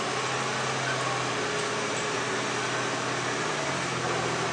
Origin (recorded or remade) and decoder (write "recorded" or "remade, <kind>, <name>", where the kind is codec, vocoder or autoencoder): recorded